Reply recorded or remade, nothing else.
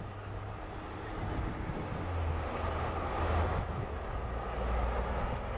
recorded